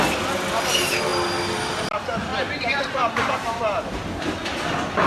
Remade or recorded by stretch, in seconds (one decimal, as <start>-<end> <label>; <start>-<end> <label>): 0.0-2.3 recorded; 2.3-2.8 remade; 2.8-5.1 recorded

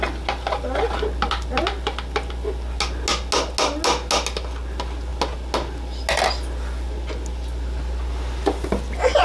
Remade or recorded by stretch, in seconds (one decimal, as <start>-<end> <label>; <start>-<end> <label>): 0.0-9.2 recorded

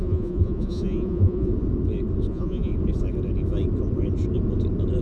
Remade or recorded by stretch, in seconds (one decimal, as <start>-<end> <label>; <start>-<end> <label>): 0.0-1.5 remade; 1.5-2.3 recorded; 2.3-2.7 remade; 2.7-5.0 recorded

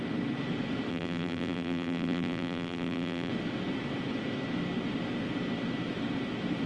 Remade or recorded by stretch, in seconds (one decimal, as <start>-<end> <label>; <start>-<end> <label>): 0.0-0.9 recorded; 0.9-3.3 remade; 3.3-6.7 recorded

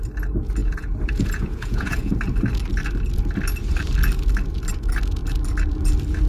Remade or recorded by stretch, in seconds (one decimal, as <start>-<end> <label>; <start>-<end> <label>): 0.0-0.6 recorded; 0.6-2.2 remade; 2.2-6.3 recorded

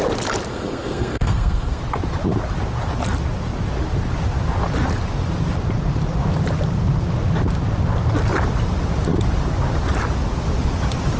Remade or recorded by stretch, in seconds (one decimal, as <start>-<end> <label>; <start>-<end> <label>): 0.0-0.5 recorded; 0.5-1.8 remade; 1.8-11.2 recorded

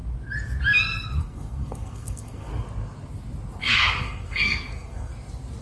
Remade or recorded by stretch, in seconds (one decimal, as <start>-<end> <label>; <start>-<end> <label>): 0.0-1.2 recorded; 1.2-2.5 remade; 2.5-3.6 recorded; 3.6-5.1 remade; 5.1-5.6 recorded

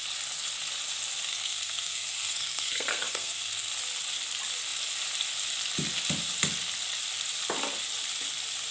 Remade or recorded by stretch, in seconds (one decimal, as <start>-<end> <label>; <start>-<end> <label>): 0.0-1.3 recorded; 1.3-3.7 remade; 3.7-8.7 recorded